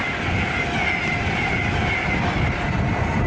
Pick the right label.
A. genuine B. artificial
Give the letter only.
A